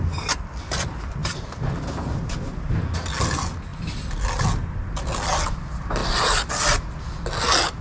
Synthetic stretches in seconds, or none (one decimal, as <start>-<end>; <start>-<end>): 1.2-1.7; 6.0-6.5